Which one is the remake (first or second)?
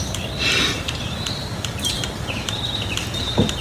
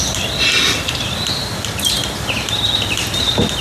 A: first